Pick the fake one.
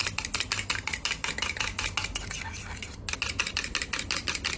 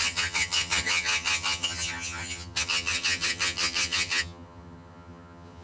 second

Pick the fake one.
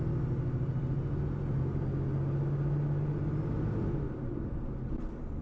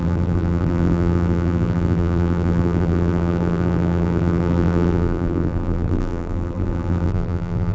second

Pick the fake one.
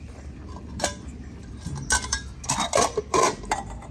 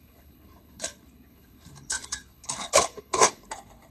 second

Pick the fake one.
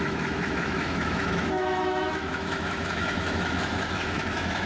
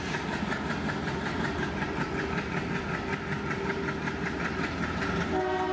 first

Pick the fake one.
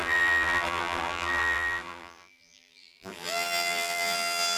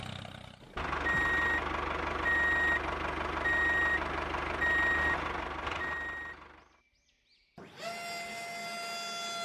first